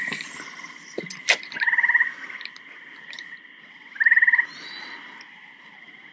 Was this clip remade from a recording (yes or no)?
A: no